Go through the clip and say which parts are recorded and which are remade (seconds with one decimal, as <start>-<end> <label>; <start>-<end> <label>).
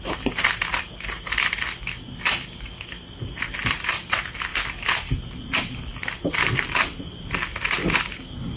0.0-8.6 recorded